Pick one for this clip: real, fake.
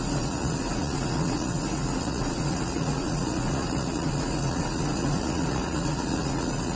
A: fake